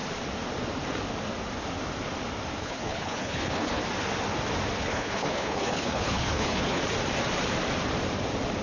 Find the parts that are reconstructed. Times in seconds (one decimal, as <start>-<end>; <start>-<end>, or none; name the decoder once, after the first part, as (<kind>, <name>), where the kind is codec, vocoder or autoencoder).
2.6-3.8 (codec, HILCodec); 4.8-6.8